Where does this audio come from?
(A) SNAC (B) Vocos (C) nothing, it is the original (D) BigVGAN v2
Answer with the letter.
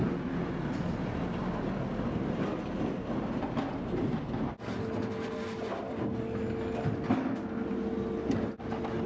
C